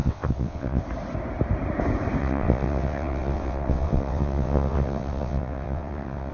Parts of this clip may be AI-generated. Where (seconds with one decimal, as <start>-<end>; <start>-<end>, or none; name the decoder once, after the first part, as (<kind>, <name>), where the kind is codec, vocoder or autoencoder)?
0.0-0.8 (vocoder, WaveNeXt); 2.2-6.3